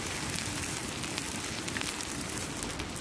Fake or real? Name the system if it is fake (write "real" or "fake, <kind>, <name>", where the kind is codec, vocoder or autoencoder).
real